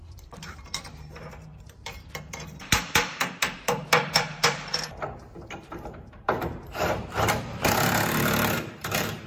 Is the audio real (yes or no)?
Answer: no